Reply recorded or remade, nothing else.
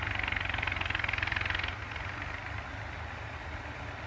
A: recorded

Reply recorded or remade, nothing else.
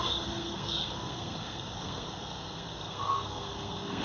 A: remade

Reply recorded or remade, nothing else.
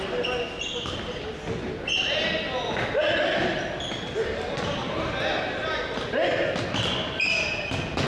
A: recorded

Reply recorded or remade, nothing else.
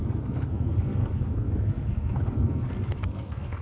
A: remade